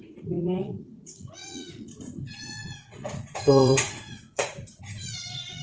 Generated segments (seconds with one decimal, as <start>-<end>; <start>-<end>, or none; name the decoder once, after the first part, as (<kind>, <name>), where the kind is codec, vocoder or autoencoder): 0.0-5.6 (vocoder, Vocos)